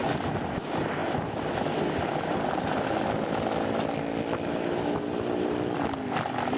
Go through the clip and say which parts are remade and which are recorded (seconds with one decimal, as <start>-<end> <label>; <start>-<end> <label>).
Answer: 0.0-6.6 recorded